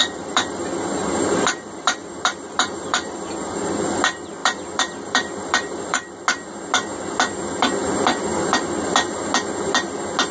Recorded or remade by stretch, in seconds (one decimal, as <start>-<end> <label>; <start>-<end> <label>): 0.0-3.4 remade; 3.4-4.4 recorded; 4.4-6.2 remade; 6.2-10.3 recorded